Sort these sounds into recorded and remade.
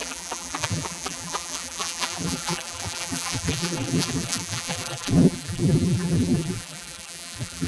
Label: remade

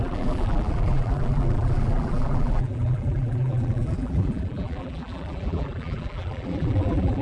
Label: remade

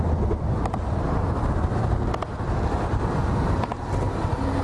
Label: recorded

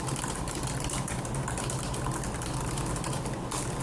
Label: remade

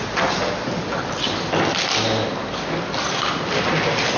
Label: recorded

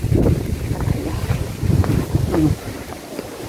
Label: recorded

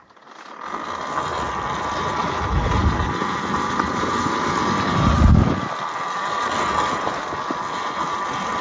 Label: recorded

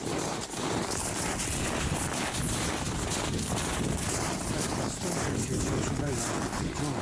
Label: recorded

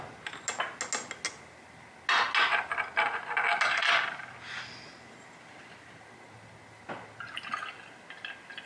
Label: recorded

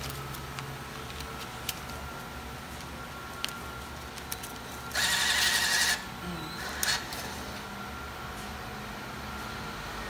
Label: recorded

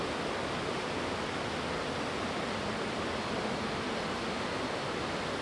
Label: recorded